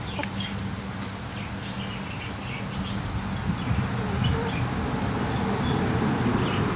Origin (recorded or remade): recorded